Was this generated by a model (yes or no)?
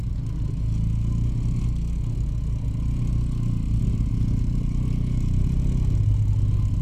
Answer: no